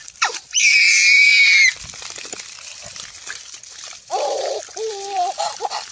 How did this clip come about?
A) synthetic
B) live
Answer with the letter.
A